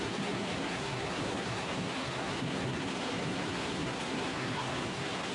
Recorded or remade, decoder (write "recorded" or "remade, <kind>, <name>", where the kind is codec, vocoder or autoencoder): remade, codec, SNAC